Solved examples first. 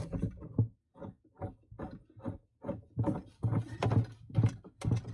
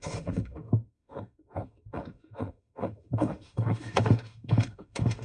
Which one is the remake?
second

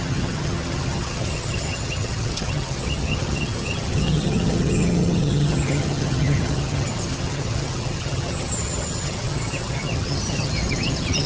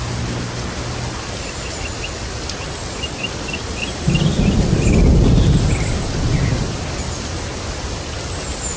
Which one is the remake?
first